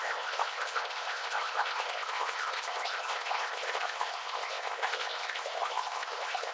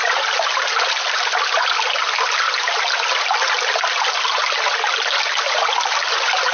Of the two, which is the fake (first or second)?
first